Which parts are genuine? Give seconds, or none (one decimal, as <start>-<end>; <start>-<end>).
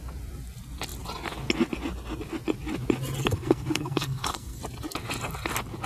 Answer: 0.0-3.2; 4.6-5.9